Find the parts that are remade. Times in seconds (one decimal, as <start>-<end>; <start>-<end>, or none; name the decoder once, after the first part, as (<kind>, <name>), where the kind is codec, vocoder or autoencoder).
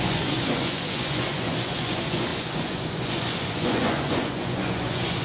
0.0-5.2 (vocoder, Vocos)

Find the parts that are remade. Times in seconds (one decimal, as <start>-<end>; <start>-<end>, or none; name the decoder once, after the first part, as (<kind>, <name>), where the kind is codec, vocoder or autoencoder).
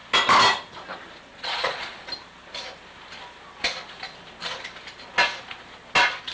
1.3-2.1 (vocoder, Vocos)